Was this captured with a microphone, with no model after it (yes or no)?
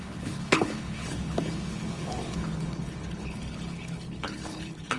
no